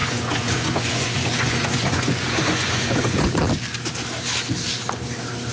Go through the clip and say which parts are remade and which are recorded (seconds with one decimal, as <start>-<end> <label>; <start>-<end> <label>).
0.0-3.3 remade; 3.3-5.5 recorded